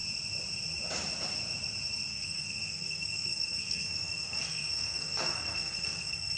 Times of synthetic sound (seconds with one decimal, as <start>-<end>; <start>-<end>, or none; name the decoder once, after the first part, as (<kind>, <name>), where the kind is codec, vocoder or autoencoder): 2.1-6.4 (codec, SNAC)